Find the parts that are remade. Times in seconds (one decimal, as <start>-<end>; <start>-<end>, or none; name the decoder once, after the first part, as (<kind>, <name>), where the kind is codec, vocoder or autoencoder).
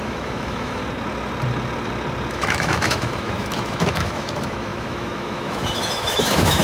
0.0-0.8 (autoencoder, DAC-VAE); 2.3-6.6